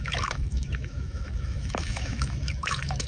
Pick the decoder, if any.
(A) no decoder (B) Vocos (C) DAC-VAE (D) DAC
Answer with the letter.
C